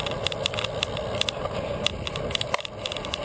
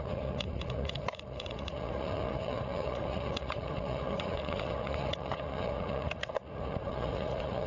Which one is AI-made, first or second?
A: second